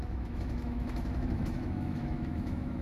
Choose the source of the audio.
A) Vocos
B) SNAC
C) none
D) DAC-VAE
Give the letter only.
D